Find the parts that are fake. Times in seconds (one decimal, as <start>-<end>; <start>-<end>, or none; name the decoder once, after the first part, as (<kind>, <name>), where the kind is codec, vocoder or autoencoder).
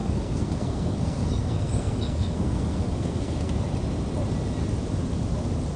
0.0-3.5 (codec, SNAC)